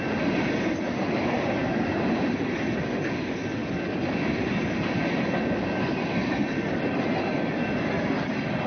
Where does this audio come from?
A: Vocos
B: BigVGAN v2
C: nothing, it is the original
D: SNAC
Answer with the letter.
C